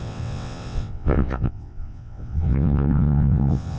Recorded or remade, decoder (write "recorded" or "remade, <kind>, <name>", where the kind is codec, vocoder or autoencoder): remade, vocoder, WaveNeXt